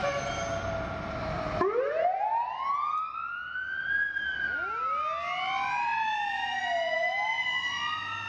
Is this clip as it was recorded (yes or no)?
yes